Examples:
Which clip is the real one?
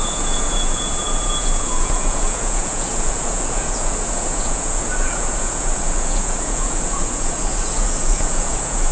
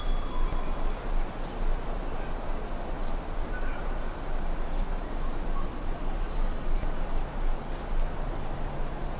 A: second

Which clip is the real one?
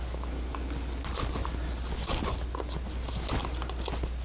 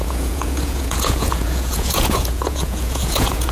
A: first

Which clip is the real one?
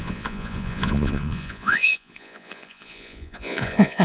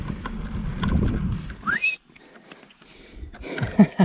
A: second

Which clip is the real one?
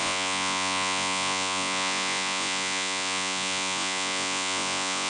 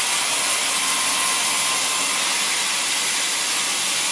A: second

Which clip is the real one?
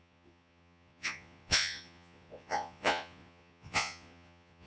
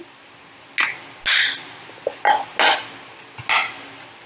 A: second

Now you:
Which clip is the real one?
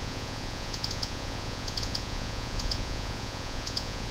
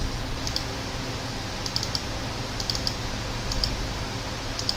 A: second